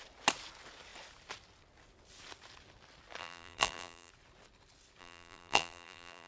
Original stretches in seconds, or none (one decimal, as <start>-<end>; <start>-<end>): 0.0-3.2; 4.1-5.0